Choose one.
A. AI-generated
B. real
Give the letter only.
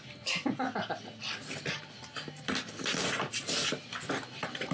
B